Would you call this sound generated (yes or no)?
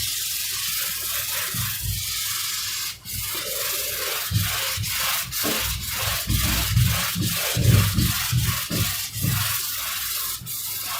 no